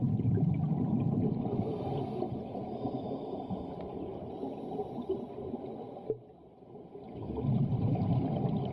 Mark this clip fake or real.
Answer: real